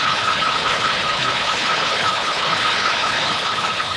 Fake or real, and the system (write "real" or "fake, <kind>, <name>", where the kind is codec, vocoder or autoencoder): fake, codec, HILCodec